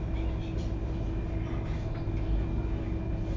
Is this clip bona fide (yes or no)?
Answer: yes